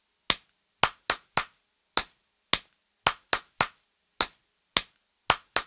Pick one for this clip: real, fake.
real